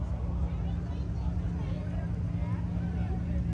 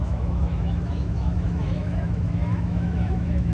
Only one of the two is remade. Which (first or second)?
second